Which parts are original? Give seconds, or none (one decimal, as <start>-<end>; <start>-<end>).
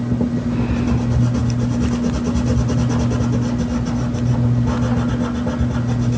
0.0-6.2